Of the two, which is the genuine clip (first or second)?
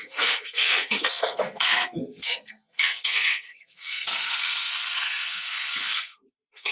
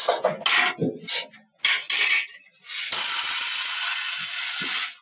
second